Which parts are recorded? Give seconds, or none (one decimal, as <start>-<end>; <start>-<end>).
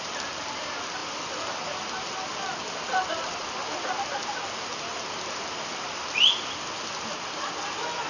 0.0-8.1